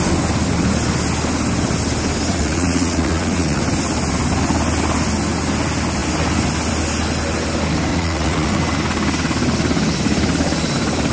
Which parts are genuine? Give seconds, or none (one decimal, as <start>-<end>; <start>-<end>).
0.0-2.3; 3.6-7.9; 8.6-11.1